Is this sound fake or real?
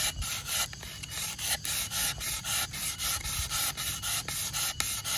real